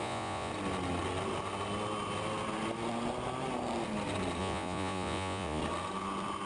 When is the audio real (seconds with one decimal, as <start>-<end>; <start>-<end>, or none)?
0.5-4.4; 5.6-6.5